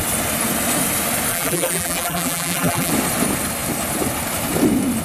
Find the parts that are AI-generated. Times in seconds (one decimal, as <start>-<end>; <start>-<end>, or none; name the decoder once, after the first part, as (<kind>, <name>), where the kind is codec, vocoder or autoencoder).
1.3-2.9 (vocoder, BigVGAN v2)